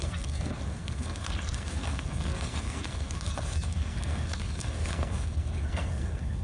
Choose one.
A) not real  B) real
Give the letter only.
A